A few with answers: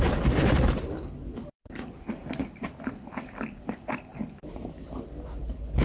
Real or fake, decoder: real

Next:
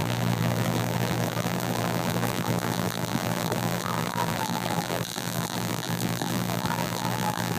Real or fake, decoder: fake, vocoder, BigVGAN v2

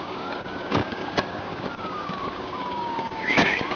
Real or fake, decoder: fake, codec, DAC